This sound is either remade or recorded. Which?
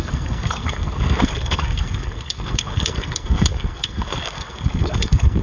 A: remade